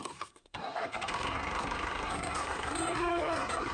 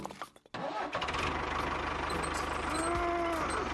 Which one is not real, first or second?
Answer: first